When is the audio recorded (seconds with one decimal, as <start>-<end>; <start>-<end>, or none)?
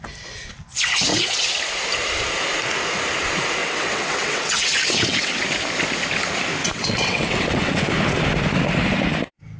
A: 0.0-1.1; 1.6-3.6; 5.4-6.6; 7.9-9.6